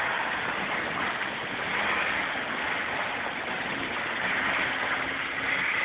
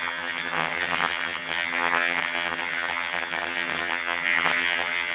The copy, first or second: second